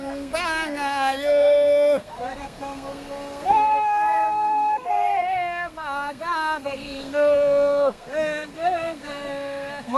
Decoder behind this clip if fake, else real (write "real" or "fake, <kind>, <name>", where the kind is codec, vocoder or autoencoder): fake, codec, SNAC